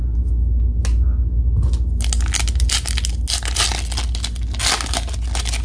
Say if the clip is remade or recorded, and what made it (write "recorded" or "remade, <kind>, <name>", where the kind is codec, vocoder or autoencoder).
recorded